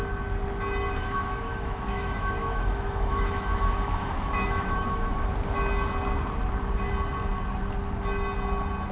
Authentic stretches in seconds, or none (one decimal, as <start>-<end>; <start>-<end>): 0.0-1.0; 5.3-8.9